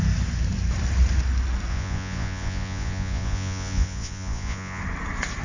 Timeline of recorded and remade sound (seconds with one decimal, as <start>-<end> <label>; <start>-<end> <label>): 0.0-1.7 recorded; 1.7-4.8 remade; 4.8-5.4 recorded